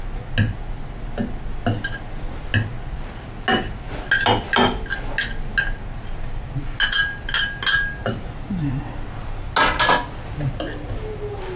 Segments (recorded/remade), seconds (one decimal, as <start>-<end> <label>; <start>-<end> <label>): 0.0-8.0 recorded; 8.0-8.8 remade; 8.8-11.6 recorded